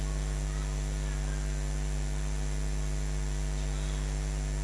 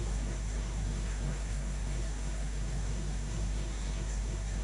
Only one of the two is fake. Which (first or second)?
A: second